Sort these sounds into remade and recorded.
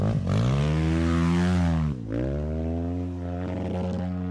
recorded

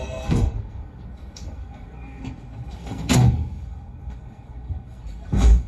remade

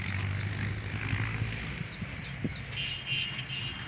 recorded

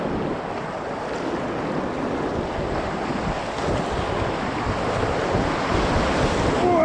recorded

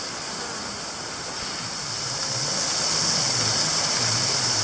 recorded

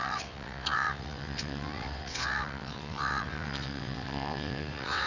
remade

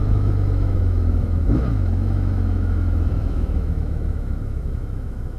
remade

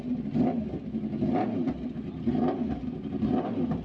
recorded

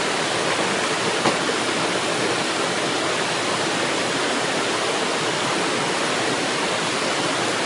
recorded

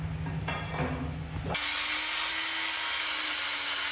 recorded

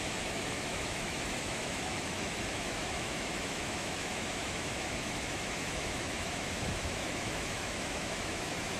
remade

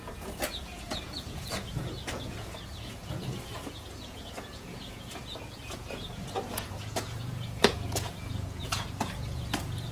remade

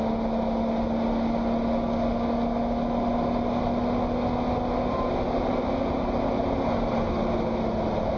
recorded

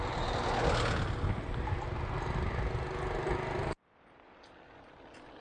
recorded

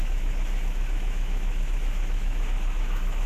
remade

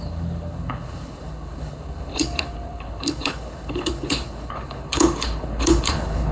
remade